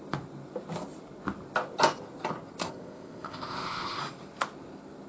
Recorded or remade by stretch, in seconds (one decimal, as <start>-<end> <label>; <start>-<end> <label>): 0.0-2.6 recorded; 2.6-4.0 remade; 4.0-5.1 recorded